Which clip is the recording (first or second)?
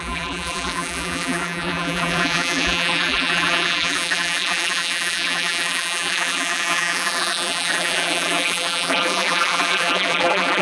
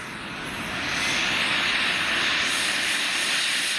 second